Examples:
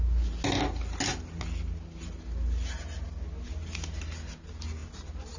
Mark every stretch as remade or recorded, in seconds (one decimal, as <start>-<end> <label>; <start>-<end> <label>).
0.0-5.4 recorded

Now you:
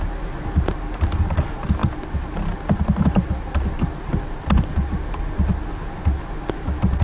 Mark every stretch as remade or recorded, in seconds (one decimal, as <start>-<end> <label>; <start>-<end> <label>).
0.0-7.0 recorded

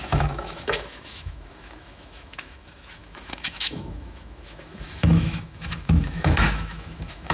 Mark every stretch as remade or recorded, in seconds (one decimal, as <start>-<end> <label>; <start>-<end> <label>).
0.0-7.3 remade

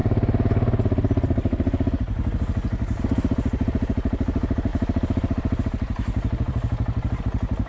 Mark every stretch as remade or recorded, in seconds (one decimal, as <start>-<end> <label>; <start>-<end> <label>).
0.0-3.0 recorded; 3.0-7.7 remade